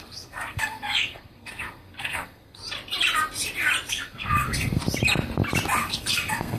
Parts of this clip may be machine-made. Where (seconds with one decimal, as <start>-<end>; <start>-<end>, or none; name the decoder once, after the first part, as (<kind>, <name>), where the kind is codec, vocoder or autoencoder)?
0.0-2.6 (codec, SNAC); 3.9-4.8; 5.8-6.6